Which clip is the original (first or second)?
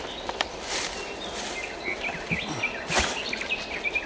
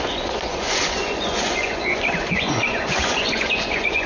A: first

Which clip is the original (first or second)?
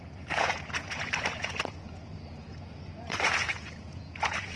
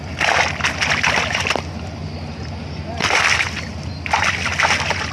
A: second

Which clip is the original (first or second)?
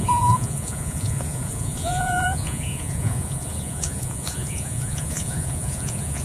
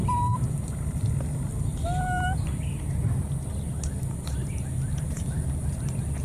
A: second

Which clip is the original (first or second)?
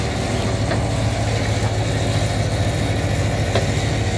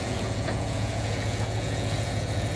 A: first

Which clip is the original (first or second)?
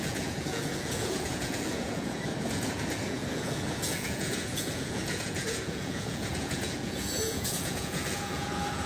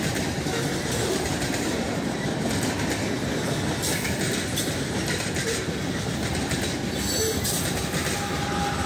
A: second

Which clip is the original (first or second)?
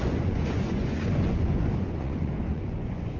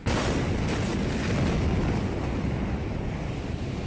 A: second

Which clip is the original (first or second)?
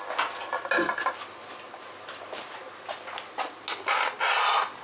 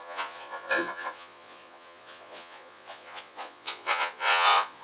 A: first